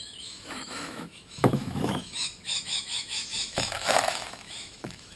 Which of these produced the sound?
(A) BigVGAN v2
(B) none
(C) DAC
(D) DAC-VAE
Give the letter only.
D